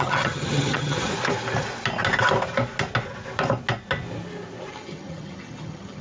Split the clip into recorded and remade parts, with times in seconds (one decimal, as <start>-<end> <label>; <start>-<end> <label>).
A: 0.0-1.1 remade; 1.1-4.7 recorded; 4.7-6.0 remade